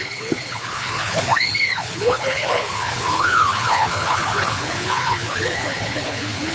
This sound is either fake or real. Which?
fake